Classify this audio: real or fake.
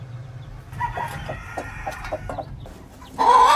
fake